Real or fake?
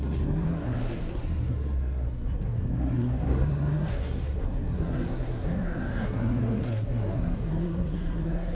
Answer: fake